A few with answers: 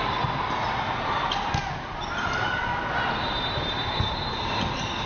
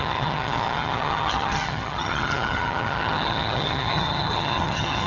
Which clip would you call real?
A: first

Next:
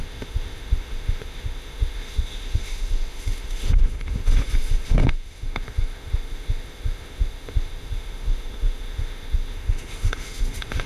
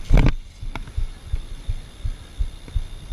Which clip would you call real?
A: second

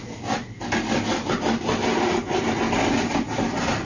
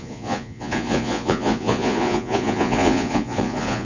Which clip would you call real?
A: first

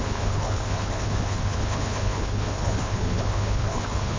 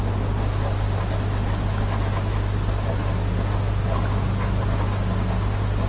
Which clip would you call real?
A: second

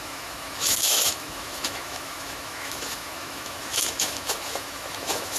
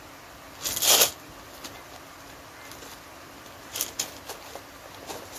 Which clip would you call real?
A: second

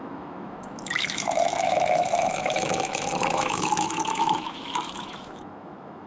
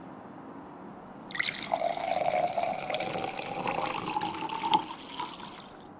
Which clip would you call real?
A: second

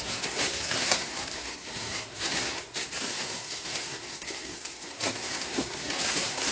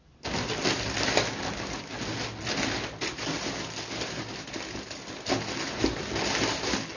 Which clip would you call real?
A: second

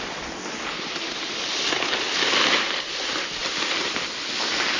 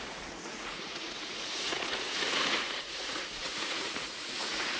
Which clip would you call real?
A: first